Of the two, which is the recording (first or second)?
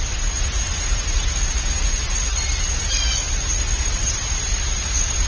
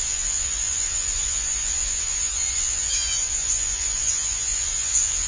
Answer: first